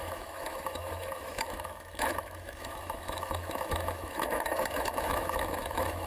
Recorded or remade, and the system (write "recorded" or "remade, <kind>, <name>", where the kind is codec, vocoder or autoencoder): remade, autoencoder, DAC-VAE